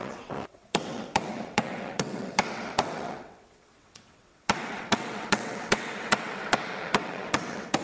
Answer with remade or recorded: remade